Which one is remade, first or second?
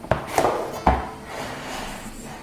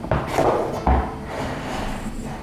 second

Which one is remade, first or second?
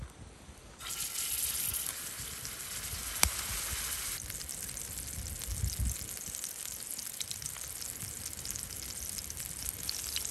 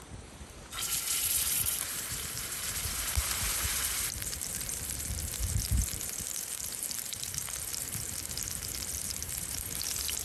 second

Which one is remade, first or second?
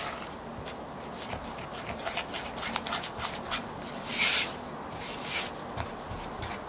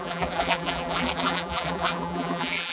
second